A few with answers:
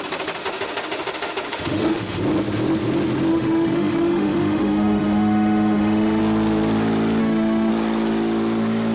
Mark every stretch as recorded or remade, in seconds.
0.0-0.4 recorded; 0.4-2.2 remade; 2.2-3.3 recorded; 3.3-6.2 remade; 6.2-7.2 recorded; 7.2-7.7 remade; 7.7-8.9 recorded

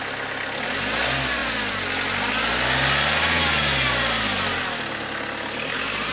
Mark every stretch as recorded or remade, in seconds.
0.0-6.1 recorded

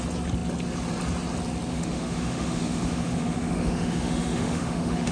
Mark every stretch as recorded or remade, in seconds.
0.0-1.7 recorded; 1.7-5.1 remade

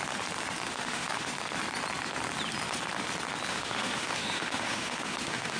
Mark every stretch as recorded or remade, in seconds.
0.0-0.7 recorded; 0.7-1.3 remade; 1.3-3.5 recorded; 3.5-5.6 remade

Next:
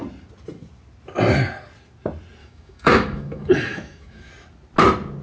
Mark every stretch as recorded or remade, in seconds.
0.0-2.4 recorded; 2.4-4.3 remade; 4.3-5.2 recorded

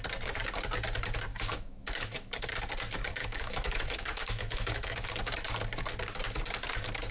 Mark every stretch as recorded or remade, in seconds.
0.0-1.3 recorded; 1.3-2.5 remade; 2.5-3.2 recorded; 3.2-5.1 remade; 5.1-7.1 recorded

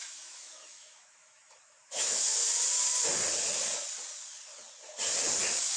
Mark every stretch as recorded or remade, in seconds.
0.0-2.3 remade; 2.3-5.8 recorded

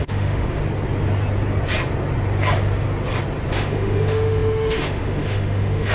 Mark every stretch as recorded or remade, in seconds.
0.0-0.6 remade; 0.6-3.5 recorded; 3.5-5.9 remade